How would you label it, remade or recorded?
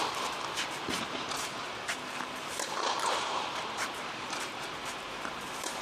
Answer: remade